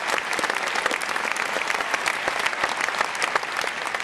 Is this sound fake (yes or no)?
no